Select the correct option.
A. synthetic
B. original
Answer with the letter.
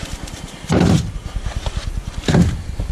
A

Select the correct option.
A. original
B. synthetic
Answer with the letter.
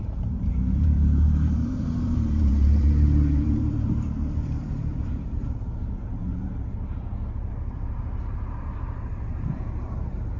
B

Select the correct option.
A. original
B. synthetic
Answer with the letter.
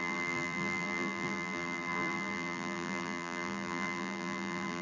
B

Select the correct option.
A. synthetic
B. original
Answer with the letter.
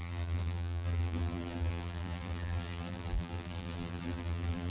A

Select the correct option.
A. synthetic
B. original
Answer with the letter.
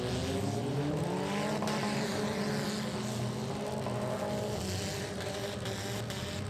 B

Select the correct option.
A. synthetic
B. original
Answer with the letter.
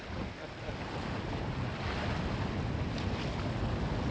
B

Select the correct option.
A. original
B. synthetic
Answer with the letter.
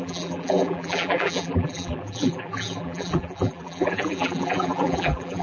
B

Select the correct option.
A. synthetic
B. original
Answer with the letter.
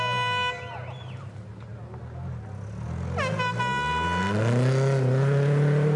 B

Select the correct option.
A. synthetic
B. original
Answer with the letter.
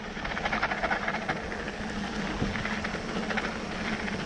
B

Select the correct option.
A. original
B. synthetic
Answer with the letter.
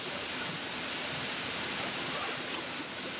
A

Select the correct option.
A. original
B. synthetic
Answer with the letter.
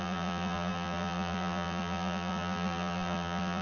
B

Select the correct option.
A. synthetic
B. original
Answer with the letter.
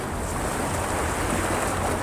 A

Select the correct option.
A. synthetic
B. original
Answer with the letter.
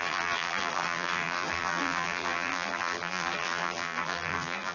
A